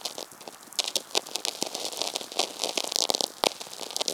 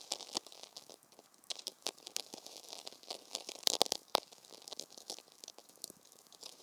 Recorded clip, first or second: first